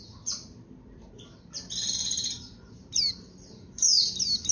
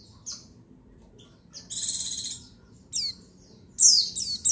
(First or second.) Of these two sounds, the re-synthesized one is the first